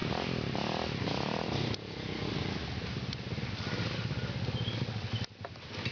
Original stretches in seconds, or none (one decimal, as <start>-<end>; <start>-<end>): 0.0-5.9